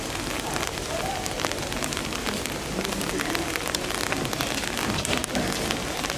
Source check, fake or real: real